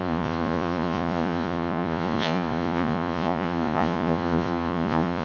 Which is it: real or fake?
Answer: fake